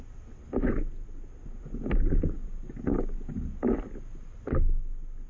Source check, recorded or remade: recorded